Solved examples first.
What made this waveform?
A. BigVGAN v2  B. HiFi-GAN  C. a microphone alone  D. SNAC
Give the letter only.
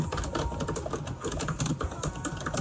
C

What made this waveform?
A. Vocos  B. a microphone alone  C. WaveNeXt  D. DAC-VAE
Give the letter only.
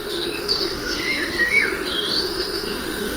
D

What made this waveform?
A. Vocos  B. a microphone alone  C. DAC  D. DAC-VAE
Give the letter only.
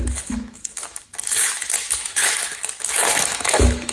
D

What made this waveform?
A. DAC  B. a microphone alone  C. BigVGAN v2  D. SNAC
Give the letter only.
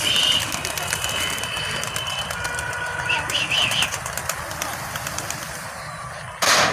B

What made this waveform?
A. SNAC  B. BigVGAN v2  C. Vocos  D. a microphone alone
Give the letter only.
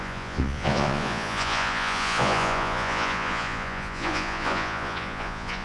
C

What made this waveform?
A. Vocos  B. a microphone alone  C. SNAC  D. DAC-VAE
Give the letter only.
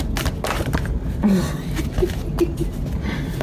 B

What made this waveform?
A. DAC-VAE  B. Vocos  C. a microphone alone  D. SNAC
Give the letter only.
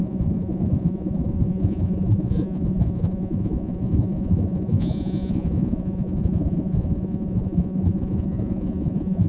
B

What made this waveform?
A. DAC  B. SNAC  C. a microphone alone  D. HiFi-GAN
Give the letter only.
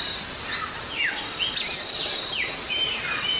C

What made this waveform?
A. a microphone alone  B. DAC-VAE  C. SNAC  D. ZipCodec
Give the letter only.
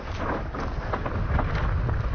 A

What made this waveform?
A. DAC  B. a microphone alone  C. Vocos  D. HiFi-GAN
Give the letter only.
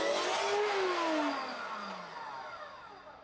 B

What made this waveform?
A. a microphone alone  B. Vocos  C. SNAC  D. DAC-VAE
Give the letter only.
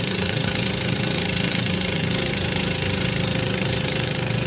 B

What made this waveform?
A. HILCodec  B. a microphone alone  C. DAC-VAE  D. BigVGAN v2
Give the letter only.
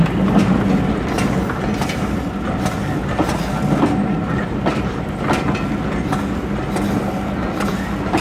B